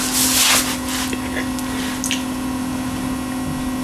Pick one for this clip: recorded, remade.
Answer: recorded